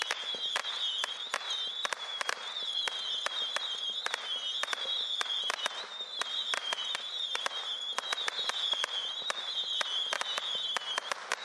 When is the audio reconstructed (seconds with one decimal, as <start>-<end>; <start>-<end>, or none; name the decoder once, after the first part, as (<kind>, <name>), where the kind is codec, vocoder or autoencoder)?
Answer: 2.1-2.8 (vocoder, BigVGAN v2); 6.1-7.4